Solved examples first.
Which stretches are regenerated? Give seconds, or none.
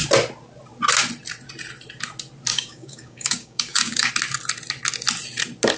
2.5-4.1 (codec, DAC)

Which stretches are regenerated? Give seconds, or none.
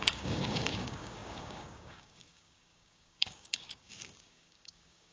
0.0-5.1 (codec, DAC)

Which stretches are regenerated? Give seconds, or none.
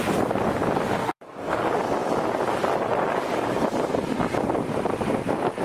1.0-1.6 (codec, DAC)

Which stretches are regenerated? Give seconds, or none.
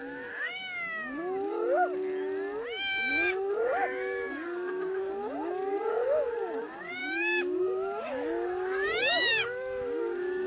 0.0-1.2 (codec, DAC); 3.1-10.5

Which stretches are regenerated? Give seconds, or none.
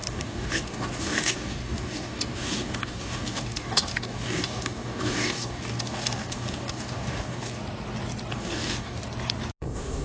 0.0-7.6 (codec, DAC); 8.3-9.0; 9.6-10.0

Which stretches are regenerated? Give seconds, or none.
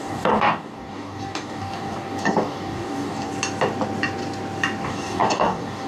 0.0-3.3 (codec, DAC); 4.8-5.9